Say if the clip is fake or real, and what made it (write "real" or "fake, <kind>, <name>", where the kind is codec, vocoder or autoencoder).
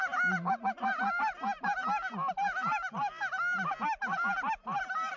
real